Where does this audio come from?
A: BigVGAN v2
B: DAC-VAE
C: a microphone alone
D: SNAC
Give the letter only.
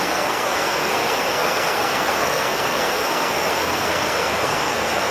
D